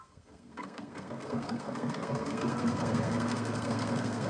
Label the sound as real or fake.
fake